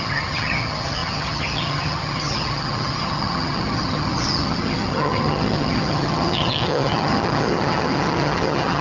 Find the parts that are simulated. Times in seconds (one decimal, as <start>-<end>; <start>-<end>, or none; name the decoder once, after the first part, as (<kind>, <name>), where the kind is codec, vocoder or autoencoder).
0.0-8.8 (vocoder, HiFi-GAN)